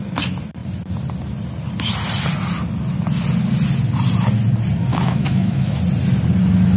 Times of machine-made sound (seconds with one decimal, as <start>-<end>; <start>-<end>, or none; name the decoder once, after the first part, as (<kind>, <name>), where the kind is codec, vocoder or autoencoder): 4.9-5.8 (autoencoder, DAC-VAE)